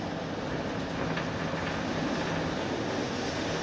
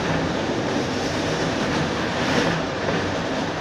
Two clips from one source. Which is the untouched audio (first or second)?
first